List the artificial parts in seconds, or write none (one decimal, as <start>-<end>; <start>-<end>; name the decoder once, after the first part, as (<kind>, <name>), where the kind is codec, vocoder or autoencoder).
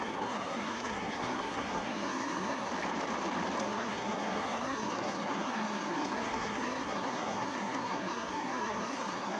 0.0-2.7 (codec, SNAC); 3.6-9.4